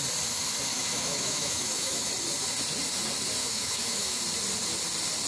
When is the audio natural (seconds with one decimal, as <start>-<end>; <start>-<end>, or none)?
0.0-0.7; 2.1-3.4; 4.2-5.3